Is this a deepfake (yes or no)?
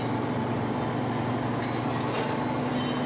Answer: no